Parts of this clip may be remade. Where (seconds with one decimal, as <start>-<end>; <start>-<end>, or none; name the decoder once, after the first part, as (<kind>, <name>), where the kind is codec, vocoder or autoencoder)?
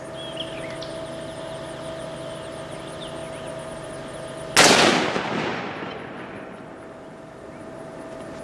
5.5-6.7 (vocoder, Vocos)